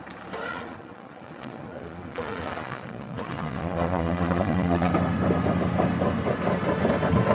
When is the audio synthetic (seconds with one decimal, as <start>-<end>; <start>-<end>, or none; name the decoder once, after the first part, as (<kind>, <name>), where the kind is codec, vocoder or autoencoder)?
0.5-4.9 (vocoder, Vocos)